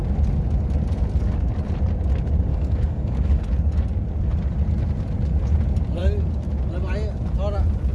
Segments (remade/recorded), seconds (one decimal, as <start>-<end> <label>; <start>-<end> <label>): 0.0-2.5 recorded; 2.5-3.4 remade; 3.4-7.9 recorded